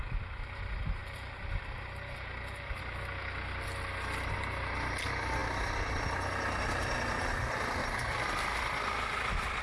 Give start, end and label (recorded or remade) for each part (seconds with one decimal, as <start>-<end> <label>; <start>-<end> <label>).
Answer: 0.0-9.6 recorded